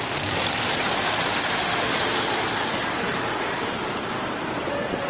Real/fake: fake